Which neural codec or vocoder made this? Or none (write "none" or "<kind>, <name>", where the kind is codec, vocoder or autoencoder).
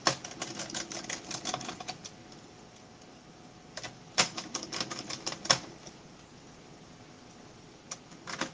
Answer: none